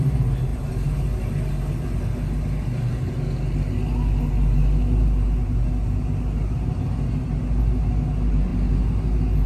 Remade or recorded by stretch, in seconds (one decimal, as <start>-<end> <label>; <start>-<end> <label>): 0.0-9.5 recorded

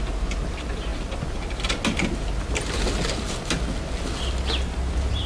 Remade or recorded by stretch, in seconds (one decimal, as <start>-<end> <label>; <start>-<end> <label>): 0.0-5.3 recorded

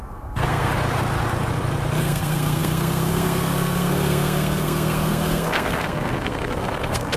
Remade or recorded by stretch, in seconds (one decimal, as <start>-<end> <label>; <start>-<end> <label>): 0.0-0.7 remade; 0.7-2.0 recorded; 2.0-7.2 remade

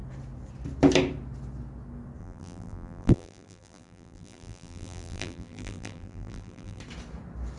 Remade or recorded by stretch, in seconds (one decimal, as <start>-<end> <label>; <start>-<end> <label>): 0.0-2.2 recorded; 2.2-6.8 remade; 6.8-7.6 recorded